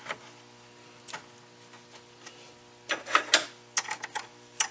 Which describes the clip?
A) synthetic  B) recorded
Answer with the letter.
B